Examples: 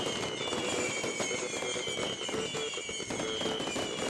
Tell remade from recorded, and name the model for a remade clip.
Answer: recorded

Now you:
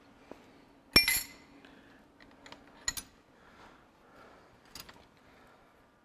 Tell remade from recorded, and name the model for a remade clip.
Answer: recorded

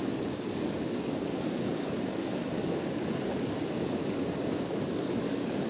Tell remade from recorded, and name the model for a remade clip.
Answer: remade, codec, DAC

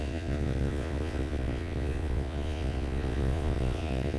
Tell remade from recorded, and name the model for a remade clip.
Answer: remade, vocoder, Vocos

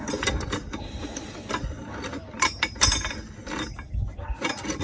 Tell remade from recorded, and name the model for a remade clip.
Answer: recorded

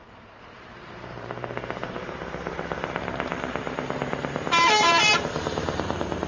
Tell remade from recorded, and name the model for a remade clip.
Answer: remade, vocoder, BigVGAN v2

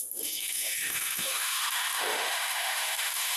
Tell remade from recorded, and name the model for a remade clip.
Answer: remade, autoencoder, DAC-VAE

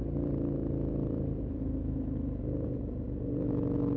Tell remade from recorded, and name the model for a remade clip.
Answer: recorded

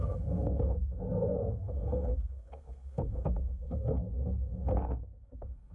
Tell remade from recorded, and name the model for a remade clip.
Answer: remade, codec, SNAC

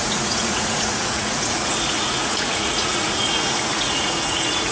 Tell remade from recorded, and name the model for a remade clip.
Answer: remade, vocoder, Vocos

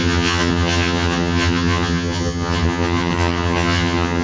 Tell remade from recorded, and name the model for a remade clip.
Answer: remade, vocoder, HiFi-GAN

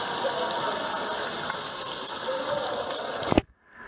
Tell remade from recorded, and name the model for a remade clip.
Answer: recorded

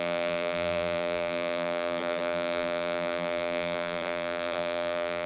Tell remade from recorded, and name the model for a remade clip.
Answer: remade, vocoder, BigVGAN v2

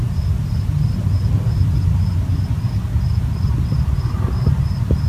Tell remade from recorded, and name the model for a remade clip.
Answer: recorded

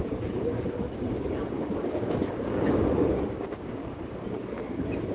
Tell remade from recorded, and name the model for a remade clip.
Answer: remade, codec, DAC